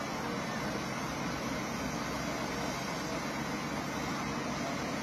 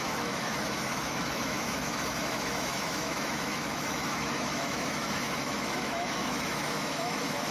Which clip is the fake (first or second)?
second